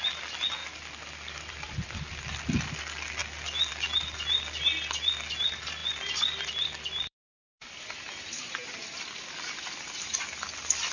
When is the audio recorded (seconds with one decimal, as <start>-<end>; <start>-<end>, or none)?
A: 0.0-0.6; 2.8-5.8